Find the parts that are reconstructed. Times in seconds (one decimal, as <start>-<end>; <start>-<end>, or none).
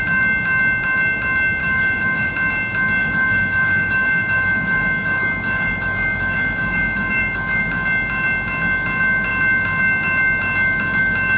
1.6-2.3; 3.0-7.6